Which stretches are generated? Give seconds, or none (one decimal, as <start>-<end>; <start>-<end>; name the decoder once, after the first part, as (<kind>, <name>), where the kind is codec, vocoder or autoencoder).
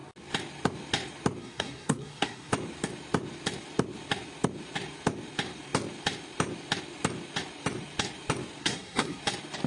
1.4-2.5 (codec, SNAC); 8.6-9.2